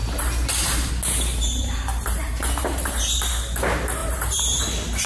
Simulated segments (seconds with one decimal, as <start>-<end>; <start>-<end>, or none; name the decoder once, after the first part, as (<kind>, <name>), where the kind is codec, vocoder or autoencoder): 0.0-0.9 (vocoder, BigVGAN v2); 1.3-3.2; 4.0-4.6